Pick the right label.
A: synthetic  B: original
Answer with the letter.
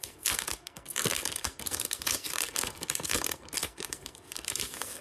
A